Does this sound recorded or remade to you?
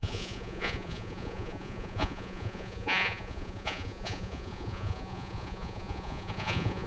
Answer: remade